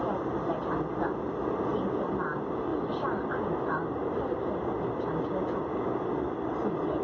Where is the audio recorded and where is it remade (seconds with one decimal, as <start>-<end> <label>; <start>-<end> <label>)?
0.0-7.0 recorded